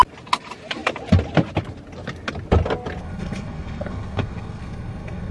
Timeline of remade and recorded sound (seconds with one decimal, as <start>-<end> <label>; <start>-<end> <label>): 0.0-3.0 recorded; 3.0-5.3 remade